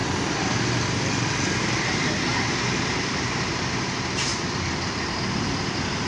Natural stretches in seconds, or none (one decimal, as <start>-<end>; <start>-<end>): 3.7-4.3